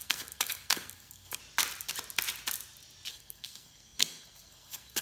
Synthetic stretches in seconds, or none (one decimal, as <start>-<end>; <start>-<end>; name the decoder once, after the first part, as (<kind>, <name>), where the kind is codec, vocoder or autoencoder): 0.0-1.4 (codec, SNAC); 3.1-5.0